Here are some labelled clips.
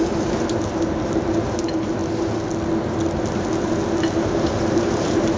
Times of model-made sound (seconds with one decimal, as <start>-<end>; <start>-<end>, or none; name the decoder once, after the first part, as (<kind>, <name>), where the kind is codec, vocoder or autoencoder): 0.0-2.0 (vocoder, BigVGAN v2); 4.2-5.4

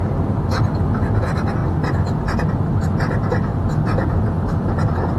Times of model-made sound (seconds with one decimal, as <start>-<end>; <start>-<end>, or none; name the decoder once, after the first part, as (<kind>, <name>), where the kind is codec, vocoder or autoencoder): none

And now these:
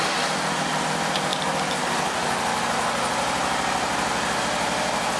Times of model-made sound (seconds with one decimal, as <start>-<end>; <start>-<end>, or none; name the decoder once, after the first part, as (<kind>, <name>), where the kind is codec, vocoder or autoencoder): none